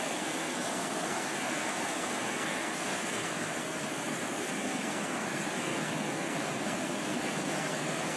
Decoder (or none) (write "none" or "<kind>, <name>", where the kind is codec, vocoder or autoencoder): codec, SNAC